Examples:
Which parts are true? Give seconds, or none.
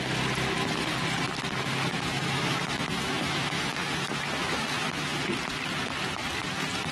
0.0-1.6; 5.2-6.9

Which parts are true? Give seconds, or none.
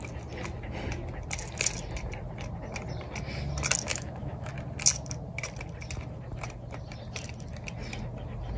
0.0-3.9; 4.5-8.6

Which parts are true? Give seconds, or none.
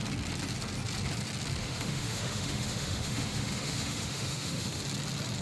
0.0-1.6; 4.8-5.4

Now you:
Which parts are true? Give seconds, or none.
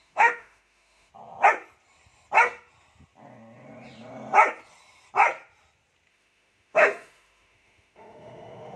1.1-6.1